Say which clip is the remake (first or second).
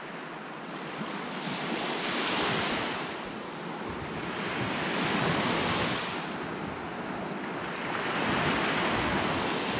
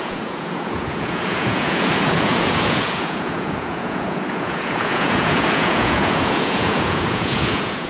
second